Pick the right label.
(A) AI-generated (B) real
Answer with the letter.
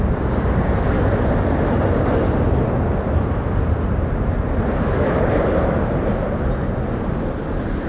B